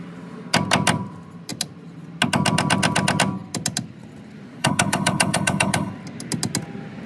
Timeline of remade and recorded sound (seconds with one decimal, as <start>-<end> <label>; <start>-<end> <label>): 0.0-4.6 recorded; 4.6-5.9 remade; 5.9-7.1 recorded